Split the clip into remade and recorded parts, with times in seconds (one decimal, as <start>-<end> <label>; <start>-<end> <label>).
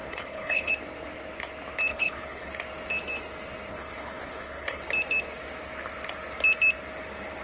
0.0-0.7 remade; 0.7-1.9 recorded; 1.9-2.5 remade; 2.5-3.7 recorded; 3.7-4.8 remade; 4.8-7.4 recorded